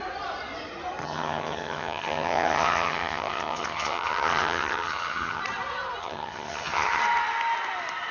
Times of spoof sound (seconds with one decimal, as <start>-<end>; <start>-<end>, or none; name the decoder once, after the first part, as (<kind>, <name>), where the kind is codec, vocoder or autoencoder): 1.0-5.4 (vocoder, HiFi-GAN); 6.0-7.0